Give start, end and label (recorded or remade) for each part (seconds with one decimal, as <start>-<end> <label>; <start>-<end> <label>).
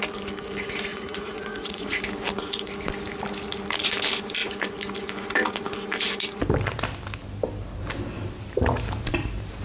0.0-0.9 recorded; 0.9-2.0 remade; 2.0-9.6 recorded